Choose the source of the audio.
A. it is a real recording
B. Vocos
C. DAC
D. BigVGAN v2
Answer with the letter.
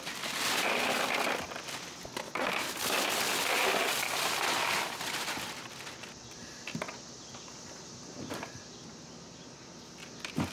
A